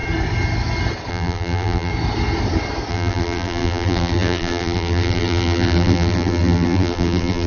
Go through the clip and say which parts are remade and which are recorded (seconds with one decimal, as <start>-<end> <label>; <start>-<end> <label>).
0.0-1.1 recorded; 1.1-1.9 remade; 1.9-2.9 recorded; 2.9-7.5 remade